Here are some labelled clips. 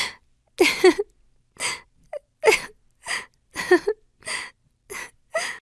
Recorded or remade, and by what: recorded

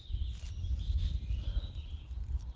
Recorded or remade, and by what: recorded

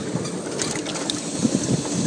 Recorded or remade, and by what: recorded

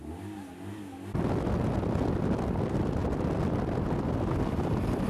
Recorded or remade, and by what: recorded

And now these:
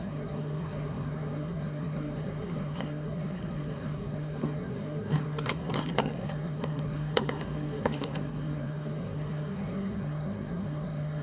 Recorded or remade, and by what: remade, codec, SNAC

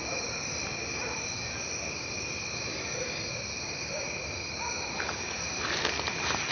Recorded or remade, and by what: recorded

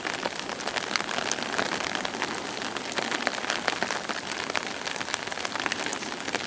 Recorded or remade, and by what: recorded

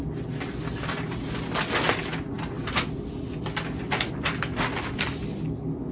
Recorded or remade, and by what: recorded